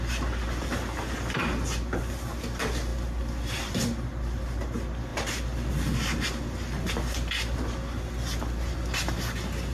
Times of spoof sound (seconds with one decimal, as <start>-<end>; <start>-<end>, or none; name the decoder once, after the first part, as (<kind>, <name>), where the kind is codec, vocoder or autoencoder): none